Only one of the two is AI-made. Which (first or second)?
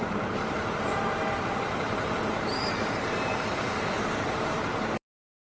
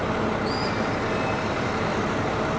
first